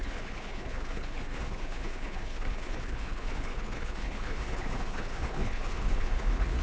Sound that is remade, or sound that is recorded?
remade